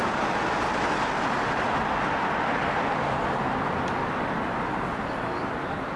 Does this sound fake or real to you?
real